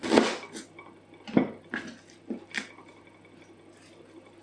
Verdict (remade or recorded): recorded